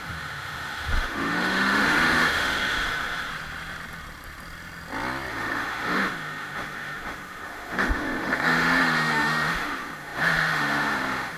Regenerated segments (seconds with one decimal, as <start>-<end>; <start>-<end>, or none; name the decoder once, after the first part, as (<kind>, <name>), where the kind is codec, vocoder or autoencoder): 0.0-3.3 (autoencoder, DAC-VAE); 5.3-11.4